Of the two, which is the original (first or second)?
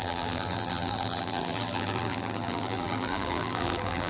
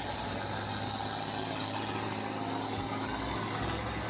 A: second